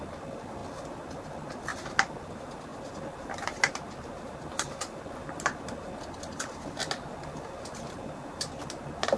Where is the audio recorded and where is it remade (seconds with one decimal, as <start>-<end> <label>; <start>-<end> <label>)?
0.0-9.2 recorded